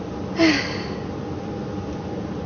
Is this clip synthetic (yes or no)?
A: no